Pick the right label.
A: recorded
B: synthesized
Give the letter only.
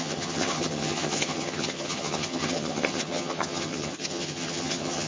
B